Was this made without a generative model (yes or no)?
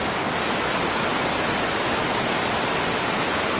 yes